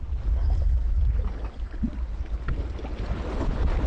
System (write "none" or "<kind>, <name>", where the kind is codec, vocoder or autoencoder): none